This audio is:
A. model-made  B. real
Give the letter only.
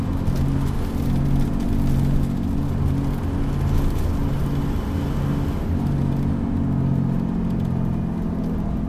B